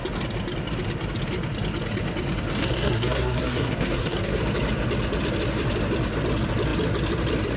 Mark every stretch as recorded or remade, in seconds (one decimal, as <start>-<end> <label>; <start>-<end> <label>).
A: 0.0-2.6 recorded; 2.6-4.4 remade; 4.4-7.6 recorded